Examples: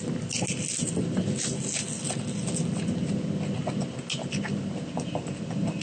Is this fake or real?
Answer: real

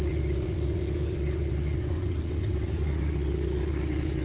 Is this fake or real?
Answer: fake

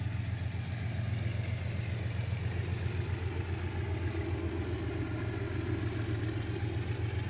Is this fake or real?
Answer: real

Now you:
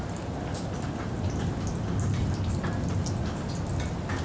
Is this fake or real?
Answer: real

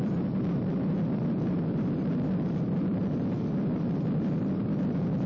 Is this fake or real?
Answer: real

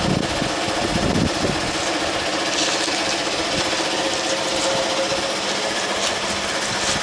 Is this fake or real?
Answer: real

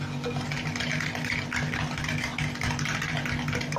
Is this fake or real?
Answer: real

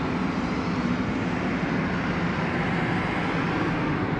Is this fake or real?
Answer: real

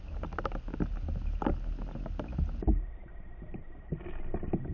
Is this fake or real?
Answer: real